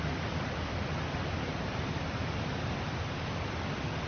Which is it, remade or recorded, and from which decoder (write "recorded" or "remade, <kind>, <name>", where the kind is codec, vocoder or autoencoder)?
recorded